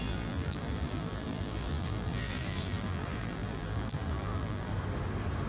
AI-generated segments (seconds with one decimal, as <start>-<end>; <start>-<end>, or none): 0.0-4.7